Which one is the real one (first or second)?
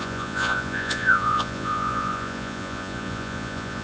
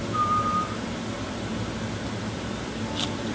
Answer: second